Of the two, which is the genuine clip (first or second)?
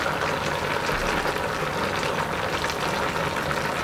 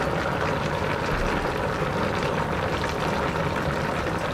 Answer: first